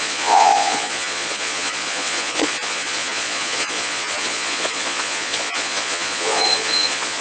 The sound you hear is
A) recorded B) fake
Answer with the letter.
B